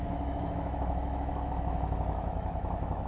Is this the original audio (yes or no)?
no